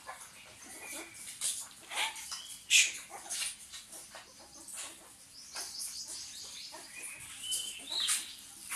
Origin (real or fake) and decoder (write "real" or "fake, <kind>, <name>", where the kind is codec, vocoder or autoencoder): real